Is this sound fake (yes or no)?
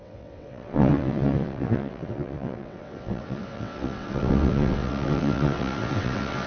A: yes